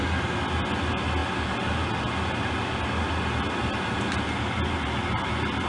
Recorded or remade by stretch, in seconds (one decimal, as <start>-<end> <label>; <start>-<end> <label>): 0.0-5.7 recorded